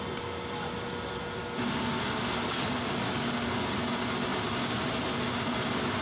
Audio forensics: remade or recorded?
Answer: recorded